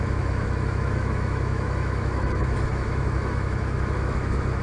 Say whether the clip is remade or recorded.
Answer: remade